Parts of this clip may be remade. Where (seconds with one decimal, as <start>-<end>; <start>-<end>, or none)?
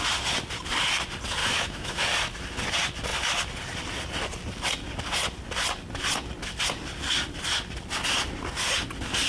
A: 1.4-2.0